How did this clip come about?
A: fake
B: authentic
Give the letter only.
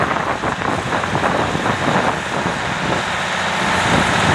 B